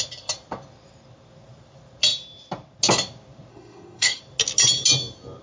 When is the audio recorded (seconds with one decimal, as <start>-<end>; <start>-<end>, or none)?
0.0-3.5; 4.2-5.4